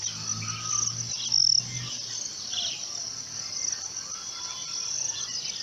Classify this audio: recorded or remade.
recorded